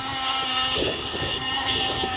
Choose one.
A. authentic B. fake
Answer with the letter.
B